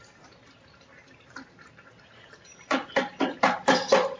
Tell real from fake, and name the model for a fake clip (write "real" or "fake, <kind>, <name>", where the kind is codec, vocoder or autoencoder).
real